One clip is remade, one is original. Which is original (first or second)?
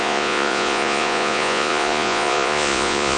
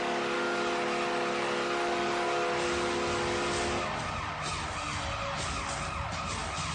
second